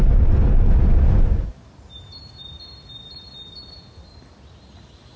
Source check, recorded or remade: recorded